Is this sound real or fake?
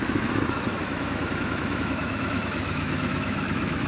fake